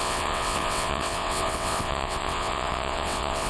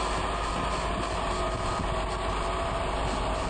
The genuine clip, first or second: second